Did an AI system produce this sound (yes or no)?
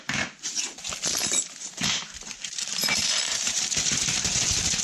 yes